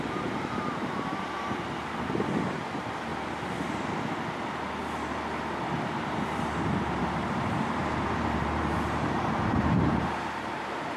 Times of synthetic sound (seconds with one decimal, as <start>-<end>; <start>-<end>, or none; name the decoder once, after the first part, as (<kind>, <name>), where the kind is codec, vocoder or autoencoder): 0.0-3.1 (vocoder, BigVGAN v2); 6.6-11.0